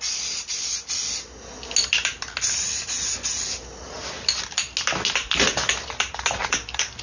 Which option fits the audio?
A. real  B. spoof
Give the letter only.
A